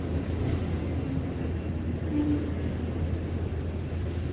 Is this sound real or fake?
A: real